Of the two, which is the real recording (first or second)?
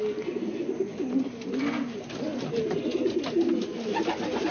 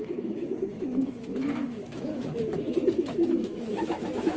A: first